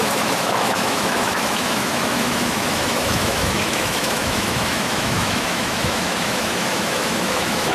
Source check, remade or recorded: remade